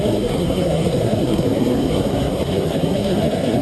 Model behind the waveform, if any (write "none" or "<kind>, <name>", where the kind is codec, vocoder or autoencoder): codec, SNAC